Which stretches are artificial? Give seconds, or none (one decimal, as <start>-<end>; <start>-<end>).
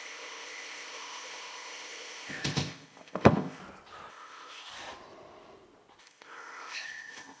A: 0.0-3.6; 4.1-4.7; 6.0-7.4